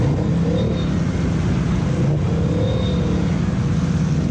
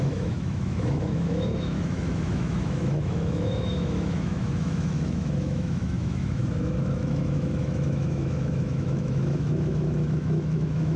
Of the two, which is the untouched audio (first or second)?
first